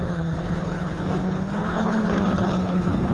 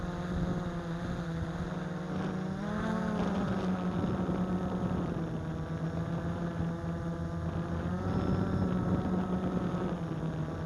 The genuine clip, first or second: second